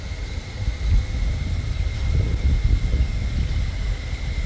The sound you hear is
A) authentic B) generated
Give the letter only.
A